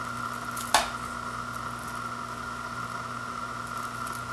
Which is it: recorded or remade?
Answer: recorded